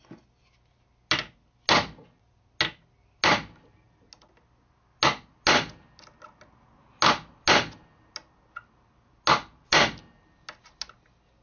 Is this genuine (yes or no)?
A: yes